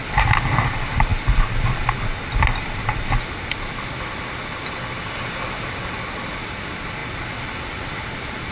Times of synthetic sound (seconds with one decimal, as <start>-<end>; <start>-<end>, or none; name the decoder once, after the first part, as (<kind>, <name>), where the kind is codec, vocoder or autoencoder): none